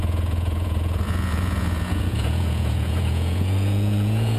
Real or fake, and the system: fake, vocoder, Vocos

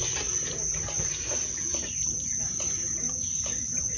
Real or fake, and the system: real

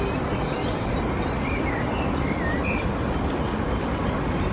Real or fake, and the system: real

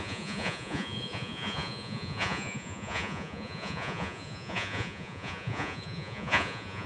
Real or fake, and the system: fake, vocoder, Vocos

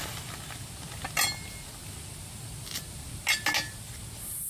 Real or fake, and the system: real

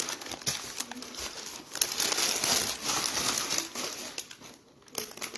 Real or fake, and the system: real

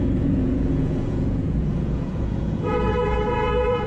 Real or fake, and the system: fake, vocoder, Vocos